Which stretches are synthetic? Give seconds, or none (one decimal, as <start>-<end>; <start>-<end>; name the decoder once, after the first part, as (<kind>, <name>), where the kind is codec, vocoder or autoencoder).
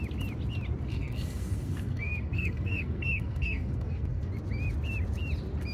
0.9-4.3 (codec, SNAC)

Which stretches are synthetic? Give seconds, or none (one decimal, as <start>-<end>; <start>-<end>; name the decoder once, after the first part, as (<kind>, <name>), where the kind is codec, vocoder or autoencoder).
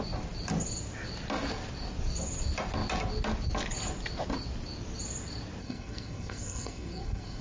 5.6-7.4 (codec, SNAC)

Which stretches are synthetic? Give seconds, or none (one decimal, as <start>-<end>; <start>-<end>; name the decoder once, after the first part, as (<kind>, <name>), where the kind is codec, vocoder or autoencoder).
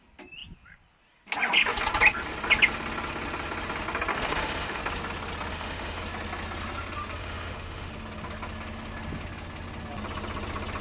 4.1-4.8 (autoencoder, DAC-VAE); 5.5-6.0; 7.2-7.9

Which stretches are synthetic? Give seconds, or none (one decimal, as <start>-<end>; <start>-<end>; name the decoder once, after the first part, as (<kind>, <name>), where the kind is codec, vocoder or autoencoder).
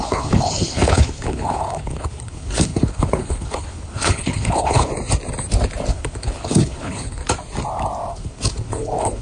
0.0-4.9 (codec, HILCodec); 5.9-7.2; 8.1-9.2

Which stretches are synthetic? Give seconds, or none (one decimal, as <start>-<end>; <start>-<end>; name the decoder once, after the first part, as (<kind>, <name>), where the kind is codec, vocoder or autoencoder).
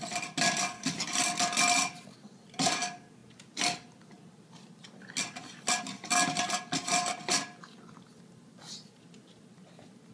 none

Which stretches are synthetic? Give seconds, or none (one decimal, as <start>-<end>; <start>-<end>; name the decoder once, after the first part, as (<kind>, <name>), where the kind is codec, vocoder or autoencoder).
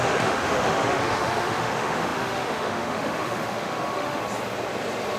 0.0-4.2 (autoencoder, DAC-VAE)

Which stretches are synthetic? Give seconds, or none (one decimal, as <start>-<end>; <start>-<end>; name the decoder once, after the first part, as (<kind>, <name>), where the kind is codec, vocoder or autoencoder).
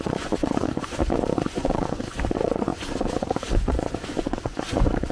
0.0-5.1 (vocoder, Vocos)